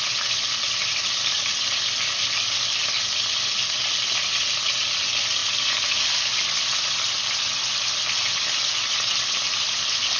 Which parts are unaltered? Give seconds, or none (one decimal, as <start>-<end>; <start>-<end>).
0.0-10.2

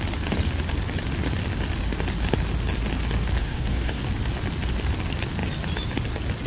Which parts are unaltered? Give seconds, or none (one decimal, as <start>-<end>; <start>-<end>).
0.0-3.4; 4.0-6.5

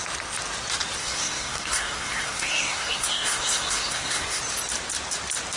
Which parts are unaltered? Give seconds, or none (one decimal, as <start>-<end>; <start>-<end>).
0.0-1.0; 4.4-5.6

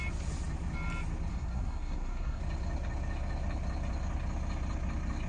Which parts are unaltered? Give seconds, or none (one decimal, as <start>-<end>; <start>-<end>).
0.0-1.3; 2.4-5.3

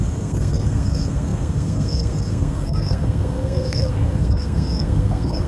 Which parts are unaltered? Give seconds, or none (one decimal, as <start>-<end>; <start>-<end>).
none

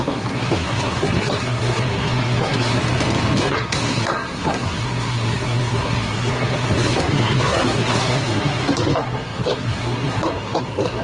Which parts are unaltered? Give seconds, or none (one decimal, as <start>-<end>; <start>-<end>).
2.8-3.4

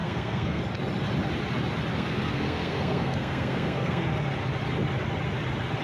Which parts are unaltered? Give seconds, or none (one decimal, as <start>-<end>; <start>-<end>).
0.6-1.9; 4.0-5.8

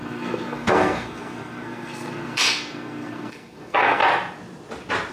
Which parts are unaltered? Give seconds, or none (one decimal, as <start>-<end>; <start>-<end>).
4.0-5.1